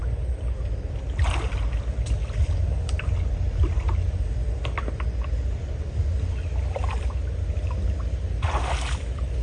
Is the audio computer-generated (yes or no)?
no